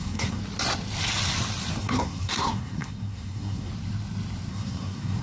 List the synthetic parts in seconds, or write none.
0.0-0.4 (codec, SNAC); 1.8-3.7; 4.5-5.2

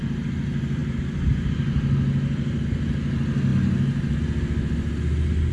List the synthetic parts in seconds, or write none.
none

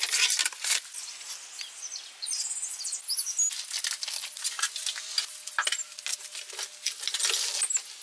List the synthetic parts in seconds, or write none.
none

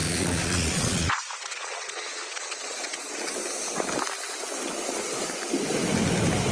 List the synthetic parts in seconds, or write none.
0.0-3.2 (vocoder, Vocos)

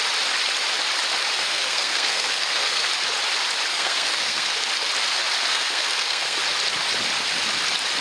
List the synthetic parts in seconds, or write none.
1.4-2.9 (codec, SNAC); 3.7-4.7; 5.5-6.4

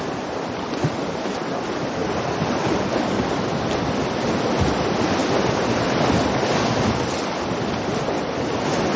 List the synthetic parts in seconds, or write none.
none